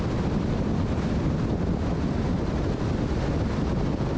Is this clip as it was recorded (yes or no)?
yes